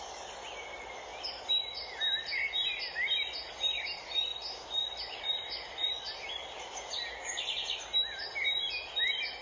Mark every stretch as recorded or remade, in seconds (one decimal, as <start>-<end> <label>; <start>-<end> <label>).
0.0-9.4 recorded